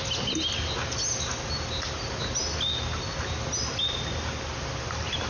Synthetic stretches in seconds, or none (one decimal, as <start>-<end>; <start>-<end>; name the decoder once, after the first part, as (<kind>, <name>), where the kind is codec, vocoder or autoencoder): none